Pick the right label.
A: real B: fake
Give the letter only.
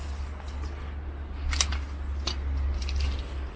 A